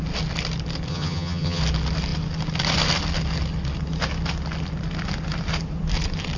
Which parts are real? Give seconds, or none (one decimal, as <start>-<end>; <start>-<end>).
0.0-0.9; 1.6-6.4